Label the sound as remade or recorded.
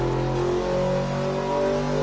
recorded